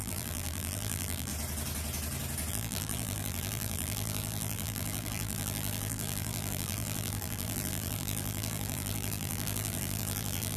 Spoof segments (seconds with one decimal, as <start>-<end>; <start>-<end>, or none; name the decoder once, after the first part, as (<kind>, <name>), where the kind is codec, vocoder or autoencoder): 0.0-1.3 (vocoder, BigVGAN v2); 2.5-10.6